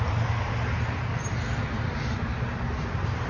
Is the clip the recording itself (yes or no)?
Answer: yes